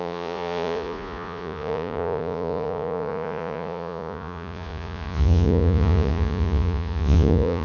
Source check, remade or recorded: remade